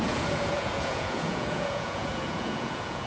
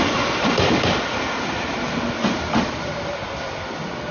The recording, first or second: second